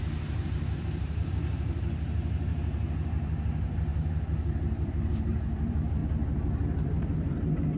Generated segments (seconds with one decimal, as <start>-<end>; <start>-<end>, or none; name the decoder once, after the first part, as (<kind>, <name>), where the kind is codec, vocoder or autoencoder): 0.0-7.8 (vocoder, BigVGAN v2)